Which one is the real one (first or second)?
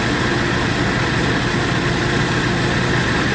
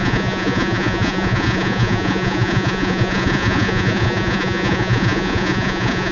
first